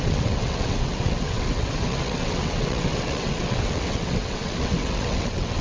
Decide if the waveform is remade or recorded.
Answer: remade